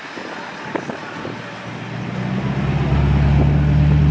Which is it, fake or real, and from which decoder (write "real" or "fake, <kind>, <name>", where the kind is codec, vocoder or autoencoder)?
real